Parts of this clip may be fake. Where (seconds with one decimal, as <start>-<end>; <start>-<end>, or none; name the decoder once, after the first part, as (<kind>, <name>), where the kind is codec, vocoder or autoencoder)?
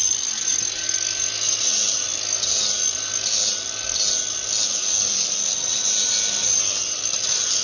none